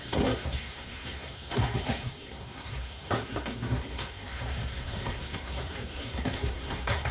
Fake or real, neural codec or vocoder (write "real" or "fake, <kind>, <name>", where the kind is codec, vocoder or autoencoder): fake, codec, SNAC